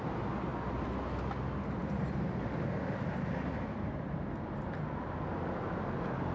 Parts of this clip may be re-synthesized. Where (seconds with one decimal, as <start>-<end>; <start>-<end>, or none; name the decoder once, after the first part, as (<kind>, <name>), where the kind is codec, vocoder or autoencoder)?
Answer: 1.8-4.8 (vocoder, BigVGAN v2)